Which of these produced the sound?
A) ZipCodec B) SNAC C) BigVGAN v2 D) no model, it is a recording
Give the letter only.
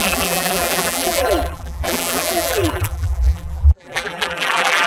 C